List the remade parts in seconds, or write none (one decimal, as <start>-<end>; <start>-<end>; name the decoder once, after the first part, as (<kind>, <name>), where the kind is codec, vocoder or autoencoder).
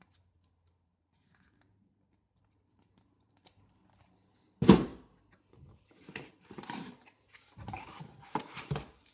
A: 0.0-4.9 (vocoder, BigVGAN v2); 6.3-9.1